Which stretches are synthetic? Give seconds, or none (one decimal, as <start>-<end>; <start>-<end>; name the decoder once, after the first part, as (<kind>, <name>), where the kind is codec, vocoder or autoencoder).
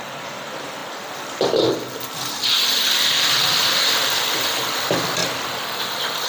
0.0-5.2 (vocoder, BigVGAN v2); 5.8-6.3